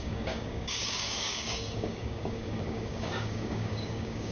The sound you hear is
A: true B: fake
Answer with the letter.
B